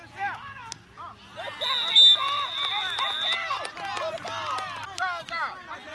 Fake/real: real